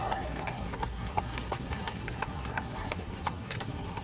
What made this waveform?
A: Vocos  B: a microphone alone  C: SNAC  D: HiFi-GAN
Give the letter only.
C